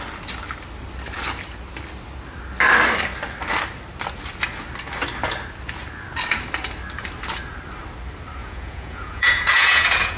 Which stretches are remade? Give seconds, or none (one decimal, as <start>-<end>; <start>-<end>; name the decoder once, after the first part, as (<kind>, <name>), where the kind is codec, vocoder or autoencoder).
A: 8.4-10.2 (vocoder, Vocos)